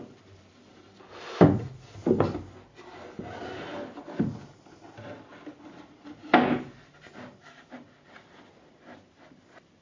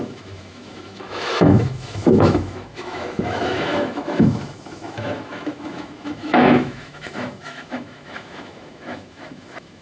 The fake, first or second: second